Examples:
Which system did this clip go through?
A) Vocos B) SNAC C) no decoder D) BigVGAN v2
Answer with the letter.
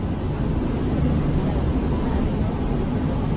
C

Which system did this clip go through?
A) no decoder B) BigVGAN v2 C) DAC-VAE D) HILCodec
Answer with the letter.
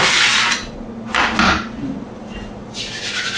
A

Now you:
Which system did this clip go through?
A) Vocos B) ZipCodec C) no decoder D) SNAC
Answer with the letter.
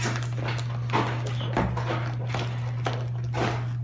C